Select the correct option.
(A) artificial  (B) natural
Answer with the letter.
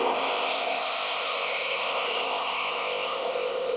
A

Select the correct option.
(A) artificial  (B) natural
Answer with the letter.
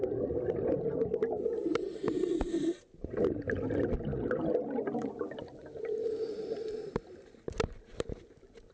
B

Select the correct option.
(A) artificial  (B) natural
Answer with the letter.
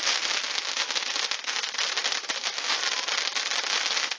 B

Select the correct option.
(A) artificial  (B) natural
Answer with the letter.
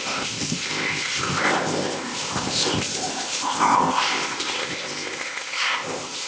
A